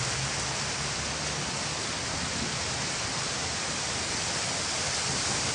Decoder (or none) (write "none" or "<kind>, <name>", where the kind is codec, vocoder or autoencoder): none